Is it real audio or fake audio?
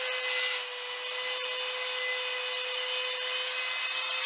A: real